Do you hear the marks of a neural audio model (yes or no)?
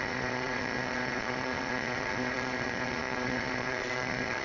yes